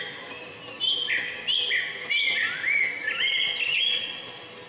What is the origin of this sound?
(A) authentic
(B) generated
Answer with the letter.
A